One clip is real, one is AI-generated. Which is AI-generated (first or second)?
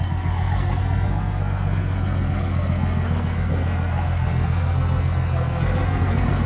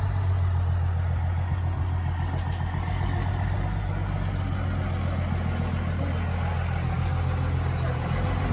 first